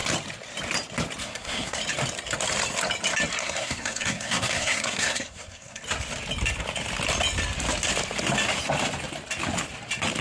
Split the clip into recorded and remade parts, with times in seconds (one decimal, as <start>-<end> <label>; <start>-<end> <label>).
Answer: 0.0-1.2 recorded; 1.2-1.8 remade; 1.8-3.4 recorded; 3.4-5.8 remade; 5.8-10.2 recorded